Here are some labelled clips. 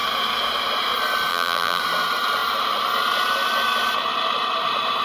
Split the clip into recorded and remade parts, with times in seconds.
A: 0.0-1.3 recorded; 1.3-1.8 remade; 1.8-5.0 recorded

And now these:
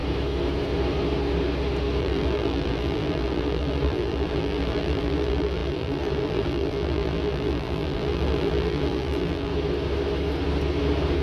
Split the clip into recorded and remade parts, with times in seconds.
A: 0.0-2.0 recorded; 2.0-9.5 remade; 9.5-11.2 recorded

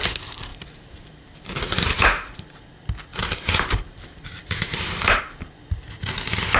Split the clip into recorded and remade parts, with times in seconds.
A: 0.0-0.5 recorded; 0.5-2.7 remade; 2.7-3.1 recorded; 3.1-5.2 remade; 5.2-6.6 recorded

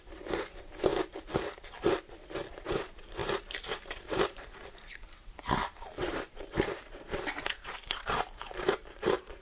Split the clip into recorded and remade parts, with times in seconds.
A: 0.0-0.9 remade; 0.9-2.5 recorded; 2.5-9.4 remade